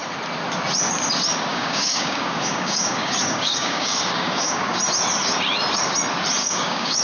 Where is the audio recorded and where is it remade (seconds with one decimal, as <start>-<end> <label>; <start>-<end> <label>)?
0.0-1.5 recorded; 1.5-4.8 remade; 4.8-6.4 recorded; 6.4-7.0 remade